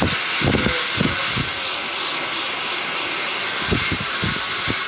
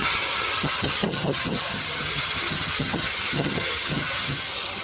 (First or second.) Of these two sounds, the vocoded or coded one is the second